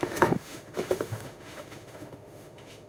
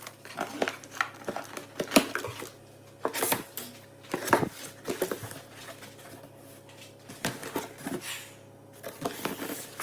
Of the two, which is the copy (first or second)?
first